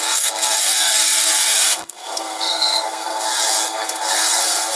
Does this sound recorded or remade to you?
remade